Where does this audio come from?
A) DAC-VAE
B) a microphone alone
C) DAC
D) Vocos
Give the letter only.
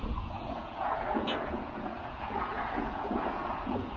D